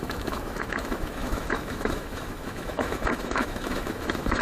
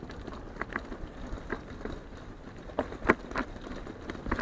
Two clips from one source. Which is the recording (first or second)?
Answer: second